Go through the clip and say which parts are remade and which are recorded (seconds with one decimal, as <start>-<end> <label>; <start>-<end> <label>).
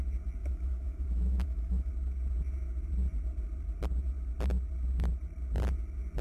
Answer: 0.0-0.4 recorded; 0.4-1.9 remade; 1.9-6.2 recorded